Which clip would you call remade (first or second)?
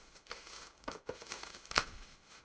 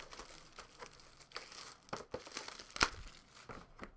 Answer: first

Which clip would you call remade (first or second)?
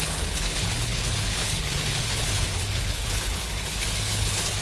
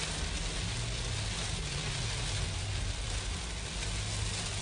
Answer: first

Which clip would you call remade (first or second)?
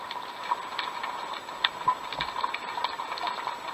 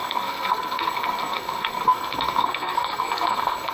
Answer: second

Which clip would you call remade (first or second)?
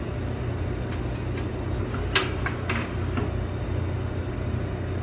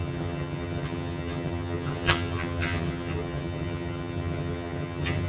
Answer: second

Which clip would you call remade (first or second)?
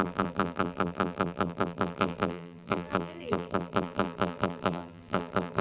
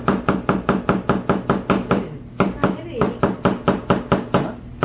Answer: first